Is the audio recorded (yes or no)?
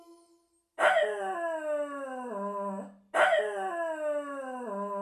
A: yes